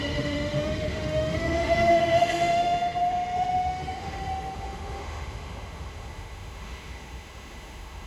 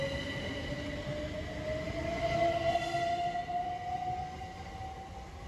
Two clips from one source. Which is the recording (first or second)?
second